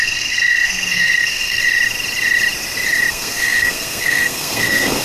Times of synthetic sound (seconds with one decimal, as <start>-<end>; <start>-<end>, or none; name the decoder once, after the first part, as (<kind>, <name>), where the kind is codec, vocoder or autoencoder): 0.0-1.6 (codec, SNAC); 3.1-5.0